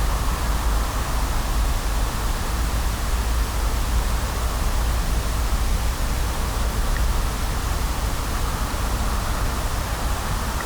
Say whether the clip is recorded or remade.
recorded